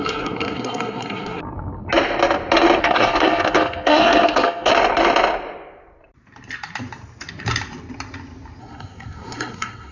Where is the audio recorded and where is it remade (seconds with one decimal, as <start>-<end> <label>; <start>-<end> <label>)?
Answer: 0.0-1.4 remade; 1.4-2.8 recorded; 2.8-4.7 remade; 4.7-8.6 recorded; 8.6-9.9 remade